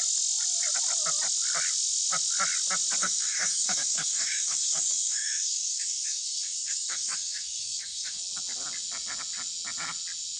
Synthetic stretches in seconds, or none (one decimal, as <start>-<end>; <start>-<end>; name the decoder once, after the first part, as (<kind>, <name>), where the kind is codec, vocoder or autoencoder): 3.0-8.2 (codec, DAC)